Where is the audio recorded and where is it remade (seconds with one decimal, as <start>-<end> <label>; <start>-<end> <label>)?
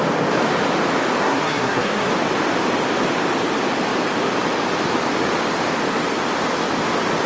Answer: 0.0-1.2 recorded; 1.2-2.1 remade; 2.1-7.3 recorded